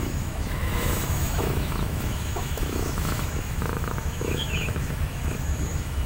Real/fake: fake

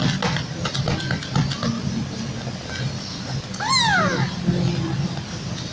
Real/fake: real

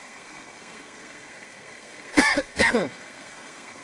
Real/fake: fake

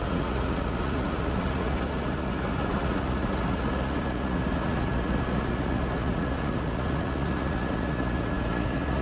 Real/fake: fake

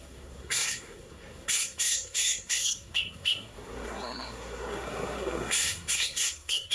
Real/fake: fake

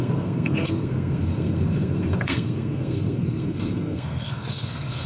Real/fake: fake